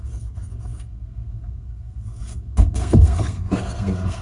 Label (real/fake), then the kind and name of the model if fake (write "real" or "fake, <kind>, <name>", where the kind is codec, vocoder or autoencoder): fake, codec, SNAC